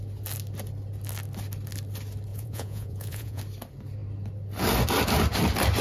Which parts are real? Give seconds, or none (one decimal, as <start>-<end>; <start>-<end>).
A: 0.0-2.3; 3.4-5.8